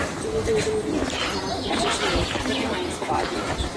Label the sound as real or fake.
real